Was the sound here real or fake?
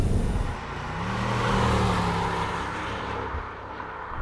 real